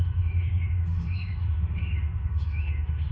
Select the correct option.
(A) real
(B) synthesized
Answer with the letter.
B